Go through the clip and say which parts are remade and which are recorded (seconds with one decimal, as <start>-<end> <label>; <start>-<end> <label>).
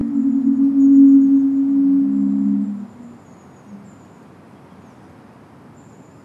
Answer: 0.0-6.2 recorded